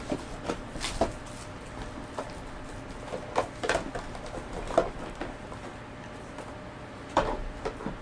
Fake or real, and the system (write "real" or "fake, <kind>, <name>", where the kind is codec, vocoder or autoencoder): real